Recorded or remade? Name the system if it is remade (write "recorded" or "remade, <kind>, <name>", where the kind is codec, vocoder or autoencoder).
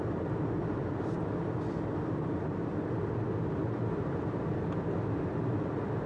recorded